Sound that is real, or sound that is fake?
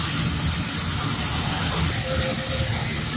real